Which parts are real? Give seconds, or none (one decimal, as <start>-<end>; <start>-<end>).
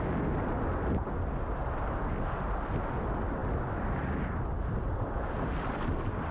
0.0-3.4